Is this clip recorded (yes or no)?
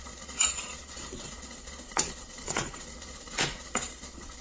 no